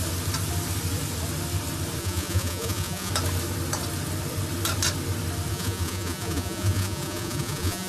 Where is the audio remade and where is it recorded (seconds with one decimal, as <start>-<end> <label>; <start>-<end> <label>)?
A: 0.0-2.0 recorded; 2.0-3.1 remade; 3.1-5.5 recorded; 5.5-7.9 remade